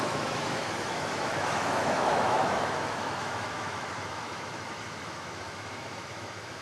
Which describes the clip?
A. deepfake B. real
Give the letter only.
A